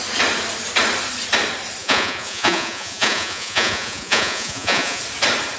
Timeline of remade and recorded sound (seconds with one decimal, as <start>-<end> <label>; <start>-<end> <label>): 0.0-1.8 recorded; 1.8-5.0 remade; 5.0-5.6 recorded